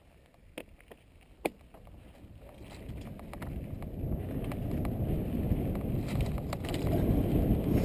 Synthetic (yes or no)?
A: no